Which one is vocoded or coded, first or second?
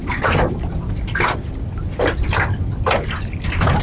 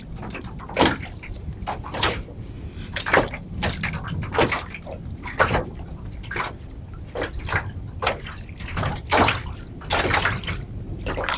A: second